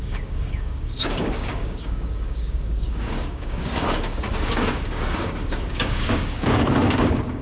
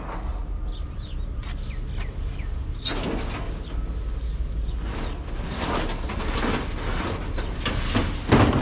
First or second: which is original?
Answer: second